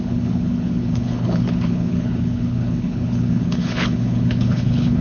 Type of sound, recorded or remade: remade